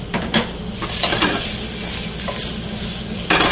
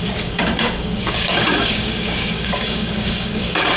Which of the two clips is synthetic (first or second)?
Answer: second